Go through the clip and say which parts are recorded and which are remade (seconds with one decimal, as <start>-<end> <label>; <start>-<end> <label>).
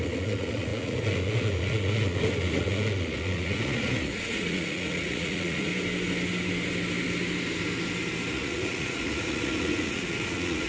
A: 0.0-5.7 remade; 5.7-8.3 recorded; 8.3-10.7 remade